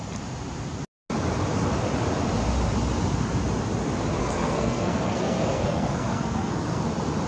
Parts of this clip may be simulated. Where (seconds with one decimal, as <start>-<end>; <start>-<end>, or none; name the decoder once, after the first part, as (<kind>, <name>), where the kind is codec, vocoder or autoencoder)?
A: 4.2-6.8 (codec, SNAC)